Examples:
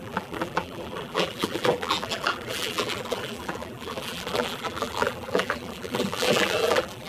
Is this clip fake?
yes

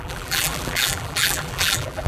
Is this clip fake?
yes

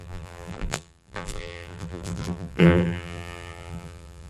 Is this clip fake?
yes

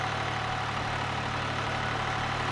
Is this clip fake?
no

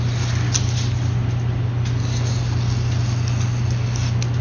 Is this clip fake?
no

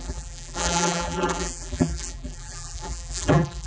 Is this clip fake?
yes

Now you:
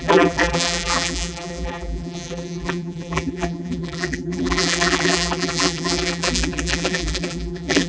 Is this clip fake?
yes